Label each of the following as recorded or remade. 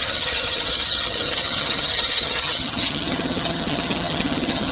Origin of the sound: remade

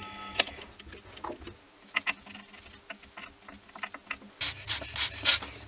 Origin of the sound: recorded